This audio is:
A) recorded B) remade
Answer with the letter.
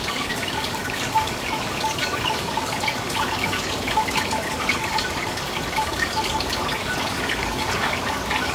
B